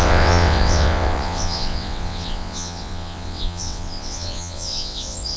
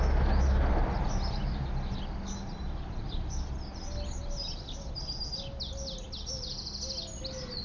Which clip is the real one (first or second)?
second